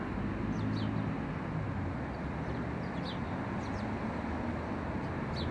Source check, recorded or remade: recorded